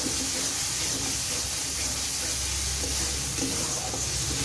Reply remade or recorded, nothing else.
recorded